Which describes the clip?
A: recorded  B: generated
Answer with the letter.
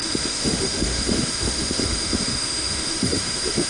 B